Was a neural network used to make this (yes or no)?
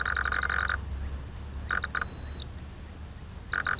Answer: no